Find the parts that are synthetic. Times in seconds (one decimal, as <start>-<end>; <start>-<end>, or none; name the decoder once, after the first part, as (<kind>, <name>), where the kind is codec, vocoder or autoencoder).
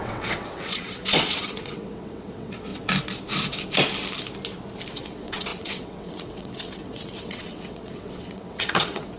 0.0-2.7 (vocoder, WaveNeXt); 4.9-9.2